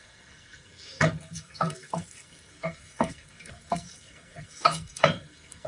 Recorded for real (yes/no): no